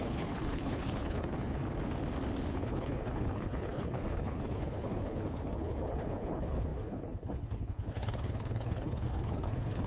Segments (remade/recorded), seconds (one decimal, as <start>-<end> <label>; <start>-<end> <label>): 0.0-1.6 remade; 1.6-2.5 recorded; 2.5-9.9 remade